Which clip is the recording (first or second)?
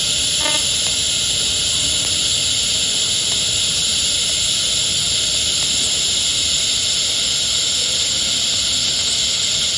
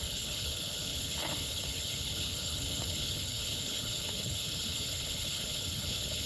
first